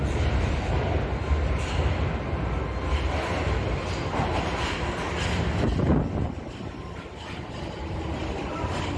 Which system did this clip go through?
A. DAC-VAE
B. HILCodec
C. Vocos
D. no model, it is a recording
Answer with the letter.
D